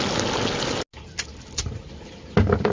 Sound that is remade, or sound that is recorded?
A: recorded